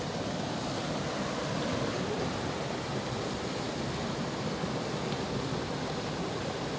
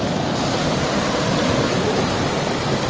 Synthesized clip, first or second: second